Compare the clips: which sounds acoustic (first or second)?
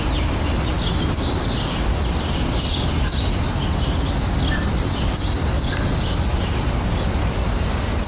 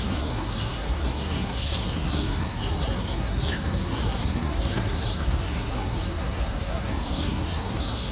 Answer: first